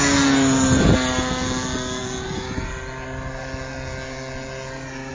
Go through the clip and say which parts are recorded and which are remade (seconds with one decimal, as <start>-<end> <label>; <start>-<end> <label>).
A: 0.0-5.1 recorded